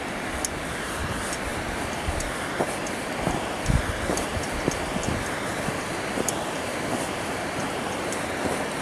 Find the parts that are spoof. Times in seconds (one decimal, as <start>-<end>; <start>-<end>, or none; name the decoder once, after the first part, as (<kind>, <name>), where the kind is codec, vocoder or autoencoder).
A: 1.5-2.6 (vocoder, BigVGAN v2); 4.3-7.6